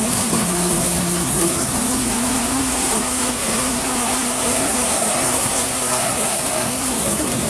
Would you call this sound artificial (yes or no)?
yes